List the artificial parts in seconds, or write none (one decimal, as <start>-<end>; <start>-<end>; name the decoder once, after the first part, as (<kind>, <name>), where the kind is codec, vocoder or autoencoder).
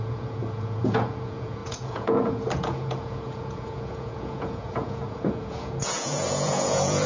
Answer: 0.0-7.1 (vocoder, Vocos)